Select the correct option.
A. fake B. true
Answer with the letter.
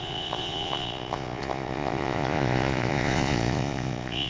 A